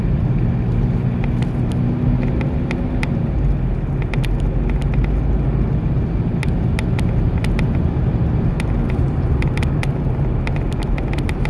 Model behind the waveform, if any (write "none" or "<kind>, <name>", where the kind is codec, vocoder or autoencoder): none